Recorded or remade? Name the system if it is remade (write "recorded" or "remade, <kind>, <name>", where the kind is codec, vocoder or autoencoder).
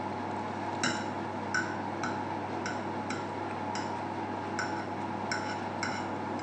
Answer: recorded